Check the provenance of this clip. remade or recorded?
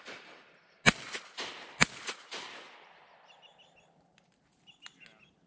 recorded